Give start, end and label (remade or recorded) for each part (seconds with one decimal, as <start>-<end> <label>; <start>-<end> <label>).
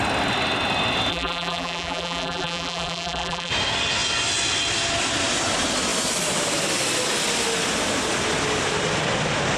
0.0-1.1 recorded; 1.1-3.5 remade; 3.5-9.6 recorded